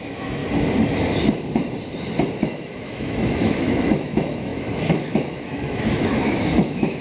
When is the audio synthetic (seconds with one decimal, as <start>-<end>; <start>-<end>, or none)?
0.0-0.4; 2.4-7.0